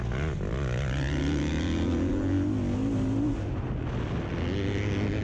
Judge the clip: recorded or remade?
recorded